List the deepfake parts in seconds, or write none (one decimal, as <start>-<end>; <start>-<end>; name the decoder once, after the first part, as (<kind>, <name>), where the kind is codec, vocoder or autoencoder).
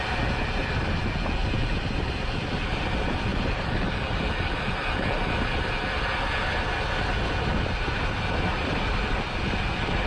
1.4-2.5 (vocoder, BigVGAN v2)